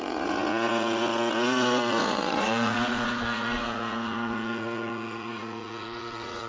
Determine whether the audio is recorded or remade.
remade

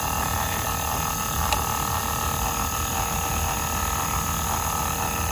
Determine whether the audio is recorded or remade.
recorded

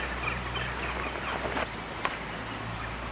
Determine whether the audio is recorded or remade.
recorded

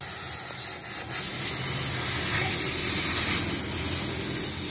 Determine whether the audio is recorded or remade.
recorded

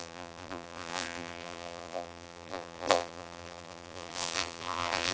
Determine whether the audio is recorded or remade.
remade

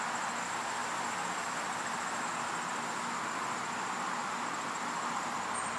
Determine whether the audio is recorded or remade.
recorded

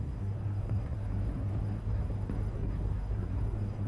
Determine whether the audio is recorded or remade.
remade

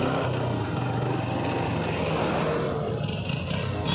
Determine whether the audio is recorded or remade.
recorded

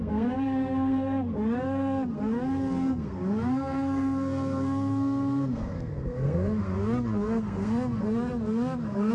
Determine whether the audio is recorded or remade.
remade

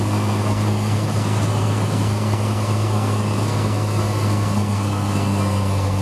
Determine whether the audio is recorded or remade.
remade